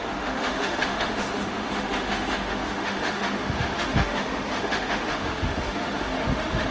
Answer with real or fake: fake